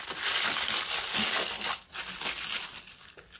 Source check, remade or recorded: recorded